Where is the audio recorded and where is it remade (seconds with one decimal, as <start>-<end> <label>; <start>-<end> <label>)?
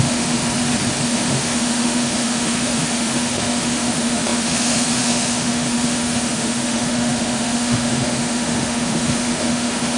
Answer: 0.0-0.4 remade; 0.4-1.0 recorded; 1.0-10.0 remade